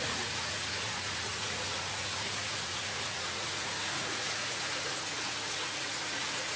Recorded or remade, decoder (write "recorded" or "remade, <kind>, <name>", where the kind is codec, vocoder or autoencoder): remade, vocoder, Vocos